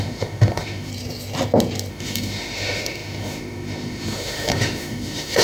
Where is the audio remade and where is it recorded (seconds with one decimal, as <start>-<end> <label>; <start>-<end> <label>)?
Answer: 0.0-0.9 remade; 0.9-1.9 recorded; 1.9-5.4 remade